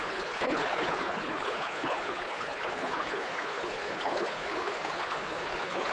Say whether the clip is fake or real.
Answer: fake